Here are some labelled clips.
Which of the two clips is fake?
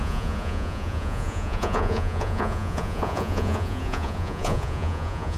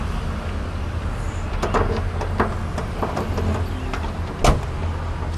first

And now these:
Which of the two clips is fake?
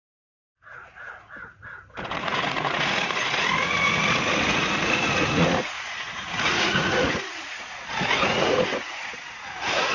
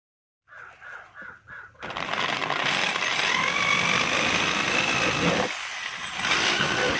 first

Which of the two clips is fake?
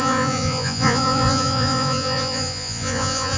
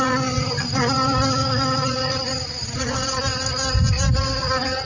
first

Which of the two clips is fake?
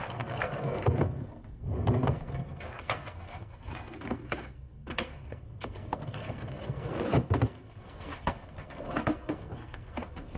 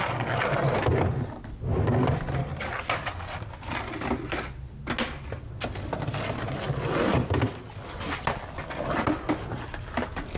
first